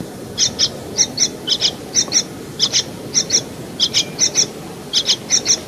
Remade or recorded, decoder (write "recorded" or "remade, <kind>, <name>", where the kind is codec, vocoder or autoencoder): recorded